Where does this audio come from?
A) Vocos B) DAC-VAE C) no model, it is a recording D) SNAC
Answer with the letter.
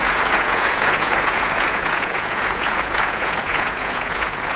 A